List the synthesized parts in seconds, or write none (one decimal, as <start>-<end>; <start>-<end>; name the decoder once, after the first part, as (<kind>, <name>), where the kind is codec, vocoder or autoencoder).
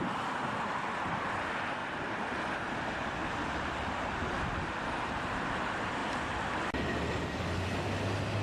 1.8-2.4 (vocoder, BigVGAN v2); 3.2-5.4